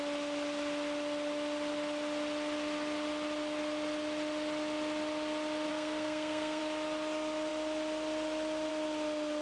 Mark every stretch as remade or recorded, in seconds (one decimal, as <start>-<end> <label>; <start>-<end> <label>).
0.0-5.7 recorded; 5.7-6.6 remade; 6.6-9.4 recorded